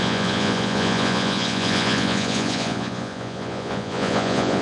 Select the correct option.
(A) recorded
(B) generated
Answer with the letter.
B